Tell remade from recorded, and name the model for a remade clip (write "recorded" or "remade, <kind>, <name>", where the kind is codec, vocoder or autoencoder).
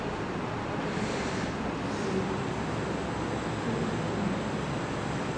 recorded